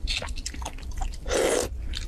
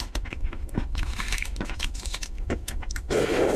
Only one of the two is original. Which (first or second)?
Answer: first